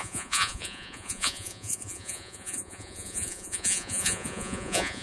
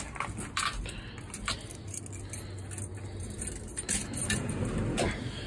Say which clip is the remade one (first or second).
first